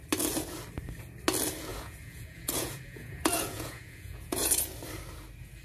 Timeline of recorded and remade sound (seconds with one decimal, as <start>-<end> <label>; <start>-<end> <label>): 0.0-1.7 recorded; 1.7-4.5 remade; 4.5-5.6 recorded